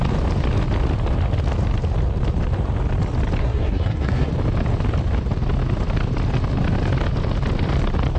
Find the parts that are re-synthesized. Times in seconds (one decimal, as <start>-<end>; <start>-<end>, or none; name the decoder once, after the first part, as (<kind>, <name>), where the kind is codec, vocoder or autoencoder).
3.4-4.3 (codec, SNAC)